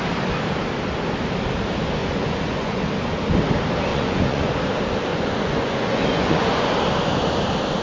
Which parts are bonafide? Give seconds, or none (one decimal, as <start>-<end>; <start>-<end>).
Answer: 0.0-2.0; 2.8-3.9; 4.5-5.1; 6.7-7.8